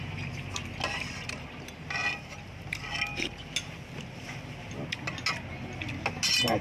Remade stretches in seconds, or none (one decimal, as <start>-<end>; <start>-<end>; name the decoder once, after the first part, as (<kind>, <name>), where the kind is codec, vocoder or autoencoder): none